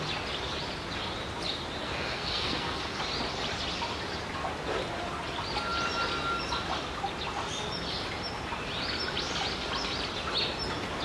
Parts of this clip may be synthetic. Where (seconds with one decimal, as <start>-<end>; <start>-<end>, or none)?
1.8-3.0